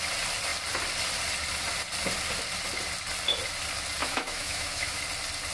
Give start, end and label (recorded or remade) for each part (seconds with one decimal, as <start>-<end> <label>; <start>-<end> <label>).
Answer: 0.0-4.0 recorded; 4.0-5.0 remade; 5.0-5.5 recorded